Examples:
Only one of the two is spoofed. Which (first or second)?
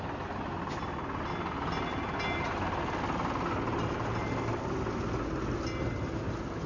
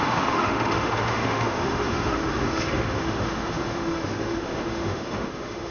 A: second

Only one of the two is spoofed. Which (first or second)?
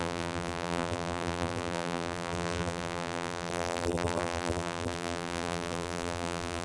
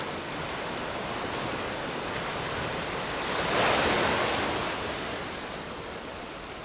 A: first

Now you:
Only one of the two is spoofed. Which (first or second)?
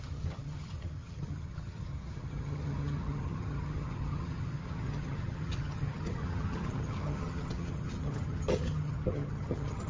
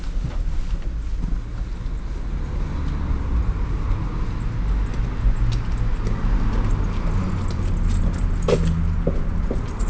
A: first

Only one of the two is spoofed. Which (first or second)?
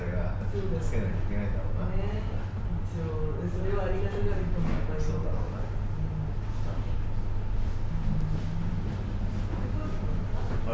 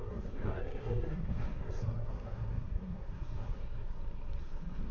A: second